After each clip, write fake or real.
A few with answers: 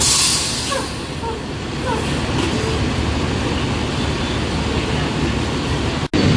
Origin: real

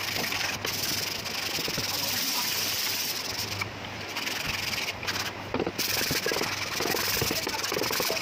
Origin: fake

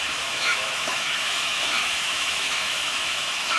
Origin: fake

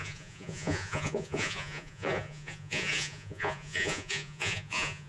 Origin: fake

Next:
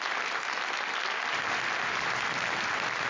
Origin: real